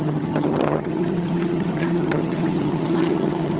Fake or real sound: fake